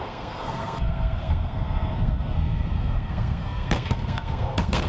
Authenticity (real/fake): fake